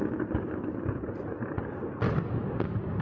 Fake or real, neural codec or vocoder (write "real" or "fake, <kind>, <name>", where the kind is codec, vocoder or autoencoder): real